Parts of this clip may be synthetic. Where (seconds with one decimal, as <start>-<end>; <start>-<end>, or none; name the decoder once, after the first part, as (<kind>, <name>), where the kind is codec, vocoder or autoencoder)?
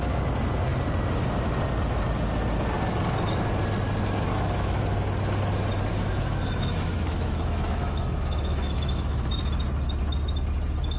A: 4.3-4.8 (autoencoder, DAC-VAE); 5.9-9.4